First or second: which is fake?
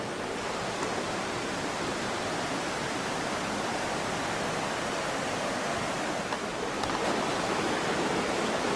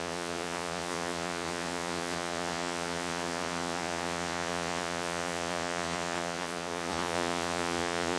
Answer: second